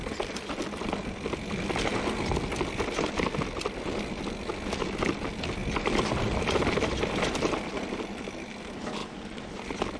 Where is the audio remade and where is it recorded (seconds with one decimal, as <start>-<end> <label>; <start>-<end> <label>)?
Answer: 0.0-5.6 recorded; 5.6-8.2 remade; 8.2-10.0 recorded